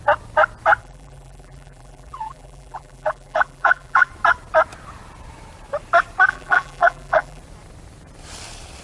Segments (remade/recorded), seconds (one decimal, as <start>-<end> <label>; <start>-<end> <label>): 0.0-0.8 recorded; 0.8-4.1 remade; 4.1-6.3 recorded; 6.3-7.4 remade; 7.4-8.8 recorded